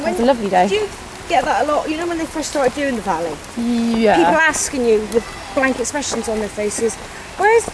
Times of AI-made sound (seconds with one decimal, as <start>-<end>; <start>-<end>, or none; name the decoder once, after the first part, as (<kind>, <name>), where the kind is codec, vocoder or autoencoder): none